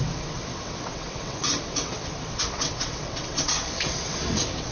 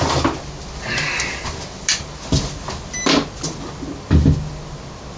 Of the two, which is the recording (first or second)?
second